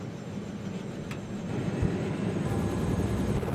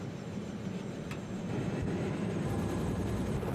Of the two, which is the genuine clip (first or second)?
first